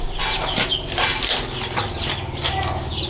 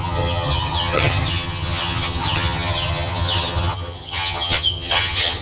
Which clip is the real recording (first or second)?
first